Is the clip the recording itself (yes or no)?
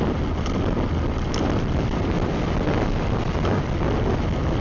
yes